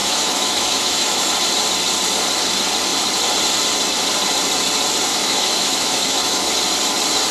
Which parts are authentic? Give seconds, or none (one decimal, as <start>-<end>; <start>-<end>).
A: 1.3-5.1; 6.5-7.3